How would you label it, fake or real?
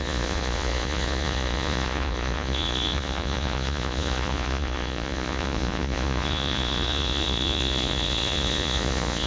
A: fake